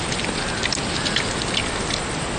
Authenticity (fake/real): real